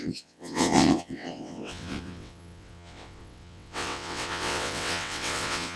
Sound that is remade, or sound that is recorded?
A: remade